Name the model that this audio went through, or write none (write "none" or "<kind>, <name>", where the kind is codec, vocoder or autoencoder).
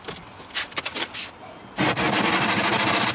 none